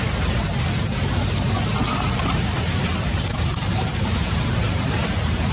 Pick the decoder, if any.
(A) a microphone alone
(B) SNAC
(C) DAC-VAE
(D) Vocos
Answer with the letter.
A